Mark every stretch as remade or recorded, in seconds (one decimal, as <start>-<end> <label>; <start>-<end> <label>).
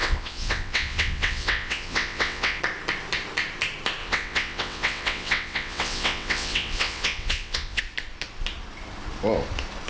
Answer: 0.0-2.6 remade; 2.6-4.0 recorded; 4.0-7.8 remade; 7.8-9.9 recorded